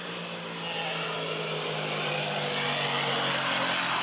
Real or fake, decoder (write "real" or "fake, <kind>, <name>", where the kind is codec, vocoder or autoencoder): real